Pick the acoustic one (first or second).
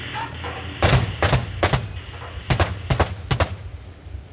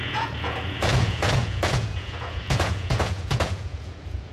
first